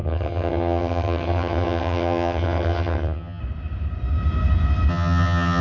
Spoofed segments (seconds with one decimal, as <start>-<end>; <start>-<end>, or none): 0.0-3.4; 4.9-5.6